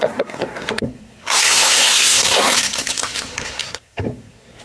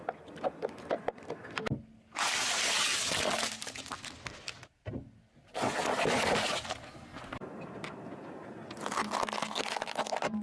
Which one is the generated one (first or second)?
first